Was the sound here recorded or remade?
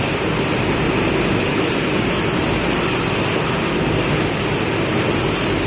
recorded